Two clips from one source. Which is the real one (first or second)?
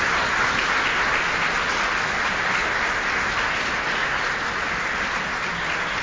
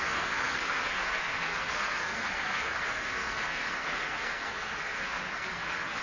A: first